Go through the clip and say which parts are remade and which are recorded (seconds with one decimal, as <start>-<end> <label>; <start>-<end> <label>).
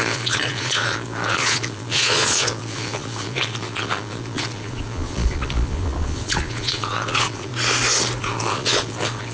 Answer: 0.0-7.5 remade; 7.5-8.2 recorded; 8.2-9.3 remade